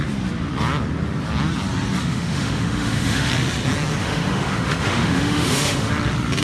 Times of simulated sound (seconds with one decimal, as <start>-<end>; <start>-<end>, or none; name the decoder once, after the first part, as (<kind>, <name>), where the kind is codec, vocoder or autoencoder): 2.0-3.3 (autoencoder, DAC-VAE); 4.0-5.9